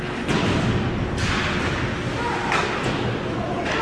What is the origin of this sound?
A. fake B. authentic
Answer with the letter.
B